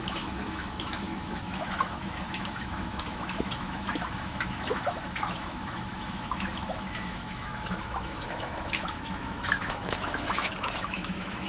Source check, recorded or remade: remade